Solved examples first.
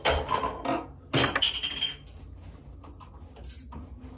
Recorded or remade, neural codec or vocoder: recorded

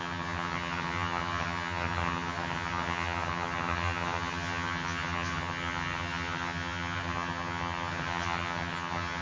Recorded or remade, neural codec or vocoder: remade, vocoder, HiFi-GAN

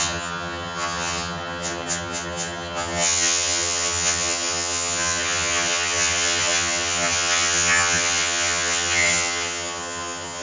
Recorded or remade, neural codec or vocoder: remade, vocoder, HiFi-GAN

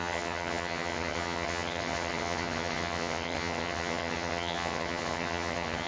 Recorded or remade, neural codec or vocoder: remade, vocoder, HiFi-GAN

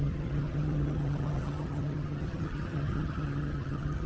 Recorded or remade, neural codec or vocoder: remade, vocoder, HiFi-GAN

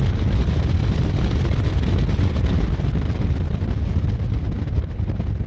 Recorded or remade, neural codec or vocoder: recorded